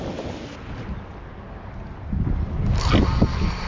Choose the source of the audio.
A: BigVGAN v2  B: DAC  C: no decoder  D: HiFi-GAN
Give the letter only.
C